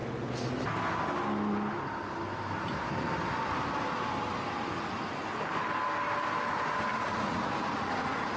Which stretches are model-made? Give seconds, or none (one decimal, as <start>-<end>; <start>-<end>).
6.9-8.4